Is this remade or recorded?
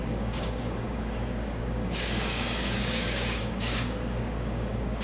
remade